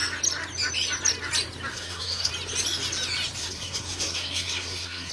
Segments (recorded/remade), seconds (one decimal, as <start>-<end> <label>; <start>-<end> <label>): 0.0-1.7 recorded; 1.7-2.3 remade; 2.3-3.4 recorded; 3.4-5.1 remade